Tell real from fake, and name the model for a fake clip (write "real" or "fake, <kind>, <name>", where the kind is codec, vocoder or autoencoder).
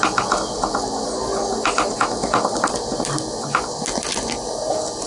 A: real